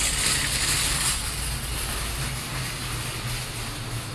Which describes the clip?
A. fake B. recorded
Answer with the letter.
B